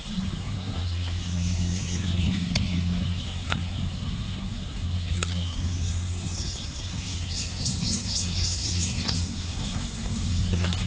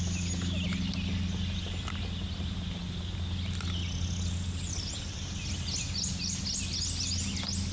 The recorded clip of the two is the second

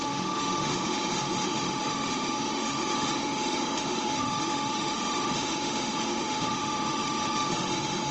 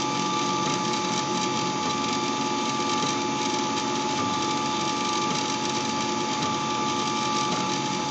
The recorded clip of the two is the second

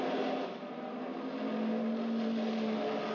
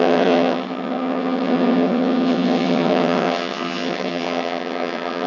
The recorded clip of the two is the first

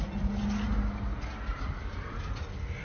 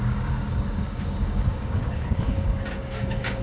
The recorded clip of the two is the first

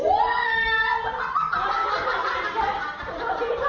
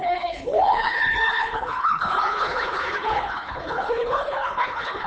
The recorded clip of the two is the first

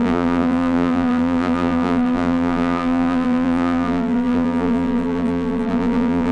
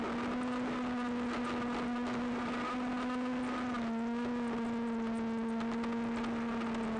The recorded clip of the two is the second